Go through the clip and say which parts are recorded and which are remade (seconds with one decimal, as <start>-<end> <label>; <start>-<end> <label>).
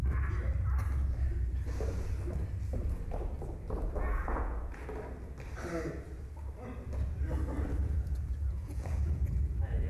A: 0.0-4.1 recorded; 4.1-4.8 remade; 4.8-7.8 recorded; 7.8-9.9 remade